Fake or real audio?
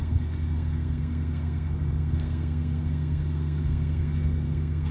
fake